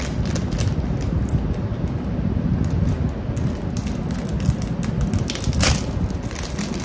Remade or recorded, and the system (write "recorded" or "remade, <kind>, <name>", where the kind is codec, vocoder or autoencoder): recorded